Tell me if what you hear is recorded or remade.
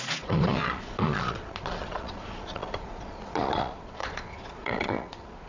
remade